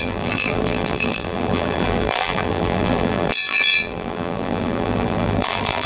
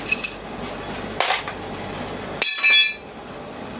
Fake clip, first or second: first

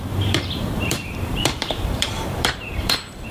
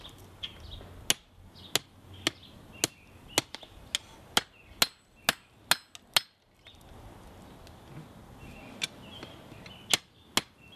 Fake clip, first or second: first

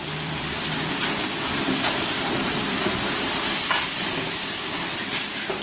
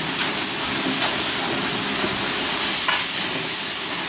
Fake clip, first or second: first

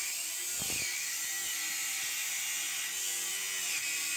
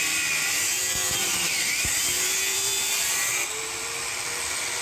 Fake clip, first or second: second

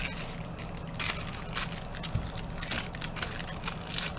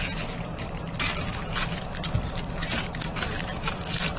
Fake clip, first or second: second